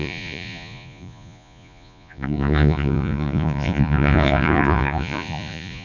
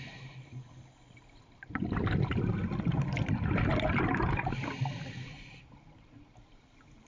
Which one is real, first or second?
second